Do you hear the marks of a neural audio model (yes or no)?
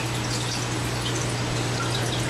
no